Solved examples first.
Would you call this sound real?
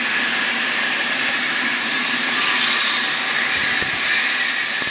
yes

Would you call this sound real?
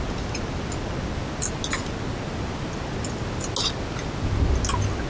yes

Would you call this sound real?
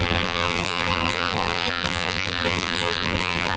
no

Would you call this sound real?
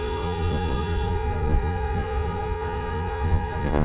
no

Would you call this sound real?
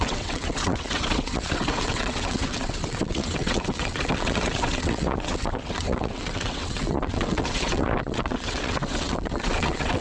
no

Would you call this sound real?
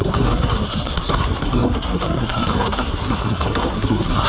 no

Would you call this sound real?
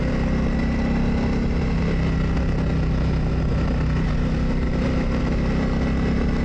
yes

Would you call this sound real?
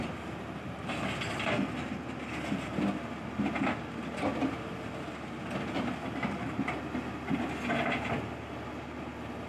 yes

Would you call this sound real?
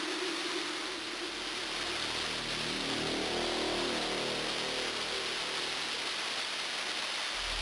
yes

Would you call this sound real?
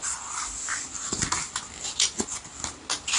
yes